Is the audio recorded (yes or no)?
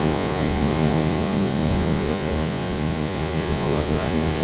no